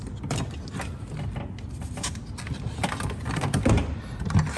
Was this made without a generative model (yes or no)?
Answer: yes